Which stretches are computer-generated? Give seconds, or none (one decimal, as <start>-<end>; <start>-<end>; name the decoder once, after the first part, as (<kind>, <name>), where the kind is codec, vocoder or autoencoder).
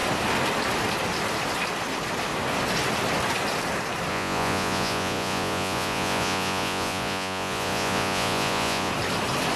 4.1-8.9 (vocoder, Vocos)